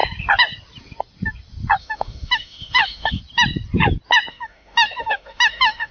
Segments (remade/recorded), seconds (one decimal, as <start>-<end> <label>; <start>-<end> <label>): 0.0-1.8 recorded; 1.8-3.2 remade; 3.2-4.3 recorded; 4.3-5.9 remade

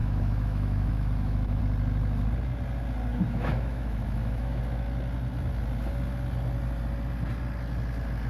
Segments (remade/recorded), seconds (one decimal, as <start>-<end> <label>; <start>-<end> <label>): 0.0-1.6 remade; 1.6-3.1 recorded; 3.1-4.6 remade; 4.6-8.3 recorded

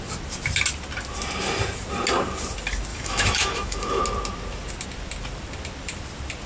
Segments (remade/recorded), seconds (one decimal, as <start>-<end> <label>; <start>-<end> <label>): 0.0-2.9 recorded; 2.9-4.0 remade; 4.0-6.5 recorded

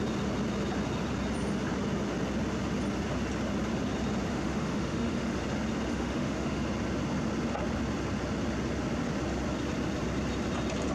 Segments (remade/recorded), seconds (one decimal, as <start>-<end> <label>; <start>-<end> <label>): 0.0-4.3 recorded; 4.3-5.4 remade; 5.4-5.9 recorded; 5.9-6.6 remade; 6.6-10.9 recorded